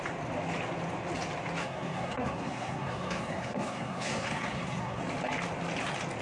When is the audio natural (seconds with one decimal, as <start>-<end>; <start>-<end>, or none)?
0.0-1.6; 5.0-6.2